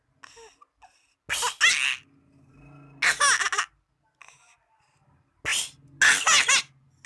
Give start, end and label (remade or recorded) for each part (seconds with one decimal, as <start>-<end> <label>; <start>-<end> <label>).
0.0-7.1 recorded